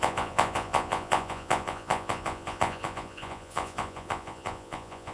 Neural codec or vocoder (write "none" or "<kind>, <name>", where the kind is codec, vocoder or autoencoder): vocoder, Vocos